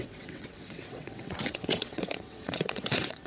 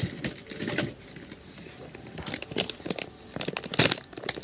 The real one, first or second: second